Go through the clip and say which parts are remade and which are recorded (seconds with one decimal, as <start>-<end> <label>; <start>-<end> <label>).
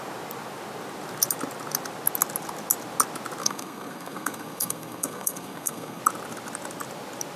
0.0-3.4 recorded; 3.4-6.0 remade; 6.0-7.4 recorded